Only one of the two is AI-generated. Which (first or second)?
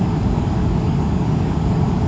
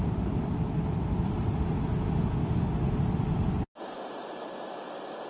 first